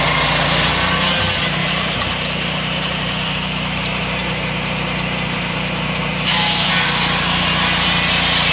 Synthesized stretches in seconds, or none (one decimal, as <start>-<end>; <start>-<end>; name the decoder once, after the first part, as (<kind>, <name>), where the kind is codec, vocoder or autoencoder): 1.6-6.7 (vocoder, BigVGAN v2)